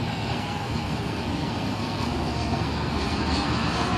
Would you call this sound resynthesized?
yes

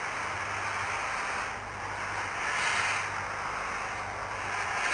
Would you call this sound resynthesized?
no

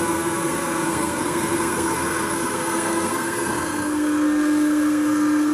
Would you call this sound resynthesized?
yes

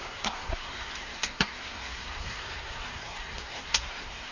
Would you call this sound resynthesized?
yes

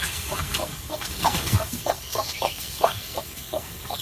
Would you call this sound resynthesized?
yes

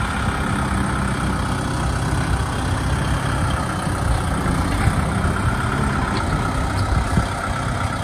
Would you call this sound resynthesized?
no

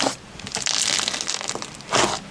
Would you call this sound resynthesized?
no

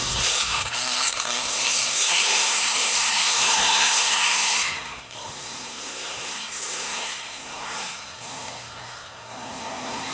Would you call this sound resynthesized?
yes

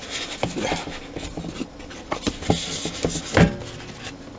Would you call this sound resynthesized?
no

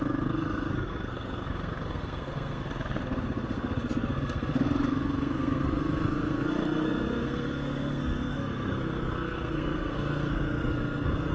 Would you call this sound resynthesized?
yes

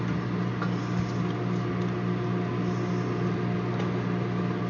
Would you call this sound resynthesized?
no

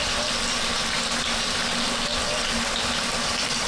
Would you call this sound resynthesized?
no